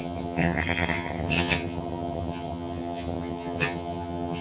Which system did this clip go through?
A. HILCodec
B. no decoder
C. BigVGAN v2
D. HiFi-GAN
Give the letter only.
D